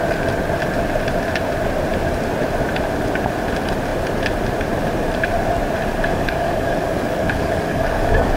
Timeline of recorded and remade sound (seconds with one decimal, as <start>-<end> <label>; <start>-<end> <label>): 0.0-6.1 recorded; 6.1-8.4 remade